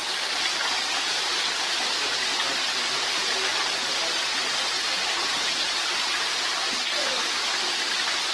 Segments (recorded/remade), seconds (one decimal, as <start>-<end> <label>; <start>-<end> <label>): 0.0-8.3 recorded